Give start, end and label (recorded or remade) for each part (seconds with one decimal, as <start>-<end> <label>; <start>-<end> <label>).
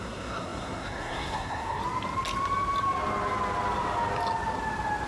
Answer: 0.0-1.8 remade; 1.8-5.1 recorded